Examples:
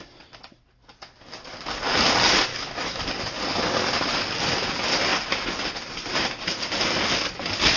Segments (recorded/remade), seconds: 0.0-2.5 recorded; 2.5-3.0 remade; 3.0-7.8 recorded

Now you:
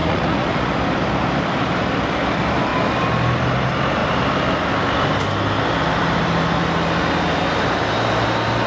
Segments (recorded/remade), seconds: 0.0-0.7 remade; 0.7-8.7 recorded

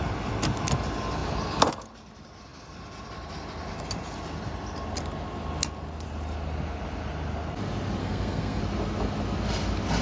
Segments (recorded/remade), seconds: 0.0-8.0 recorded; 8.0-8.6 remade; 8.6-10.0 recorded

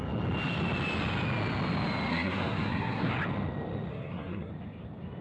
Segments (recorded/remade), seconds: 0.0-2.1 recorded; 2.1-3.1 remade; 3.1-3.9 recorded; 3.9-4.5 remade; 4.5-5.2 recorded

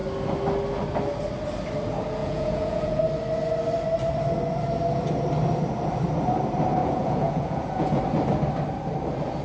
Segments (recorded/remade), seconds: 0.0-2.2 recorded; 2.2-3.0 remade; 3.0-6.8 recorded; 6.8-8.0 remade; 8.0-9.4 recorded